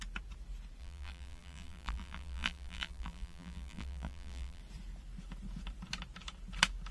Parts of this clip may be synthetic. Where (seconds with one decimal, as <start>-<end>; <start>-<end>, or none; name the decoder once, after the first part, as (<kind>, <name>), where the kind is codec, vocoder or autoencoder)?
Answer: 0.8-4.6 (vocoder, BigVGAN v2)